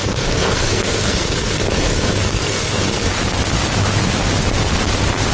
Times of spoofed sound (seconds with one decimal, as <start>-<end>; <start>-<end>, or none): 0.0-3.1